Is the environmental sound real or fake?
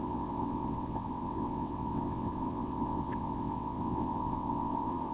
fake